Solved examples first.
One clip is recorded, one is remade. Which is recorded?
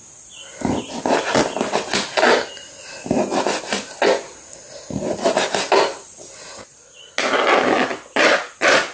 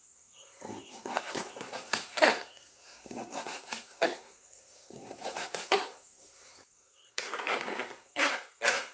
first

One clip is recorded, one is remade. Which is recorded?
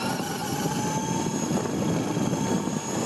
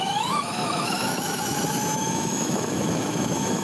first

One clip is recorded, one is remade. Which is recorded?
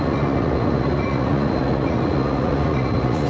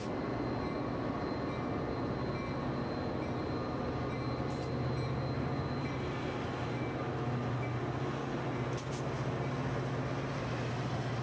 second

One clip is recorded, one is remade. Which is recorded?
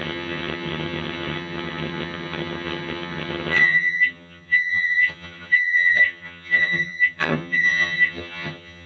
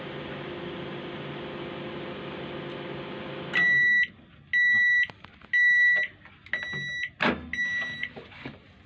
second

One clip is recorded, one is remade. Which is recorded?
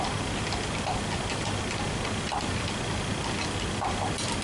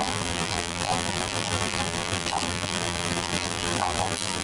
first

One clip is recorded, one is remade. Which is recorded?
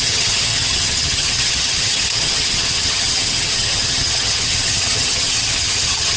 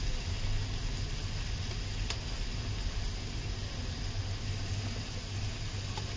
second